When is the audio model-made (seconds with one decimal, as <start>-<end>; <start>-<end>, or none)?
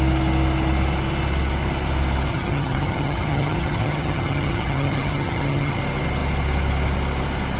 2.3-5.8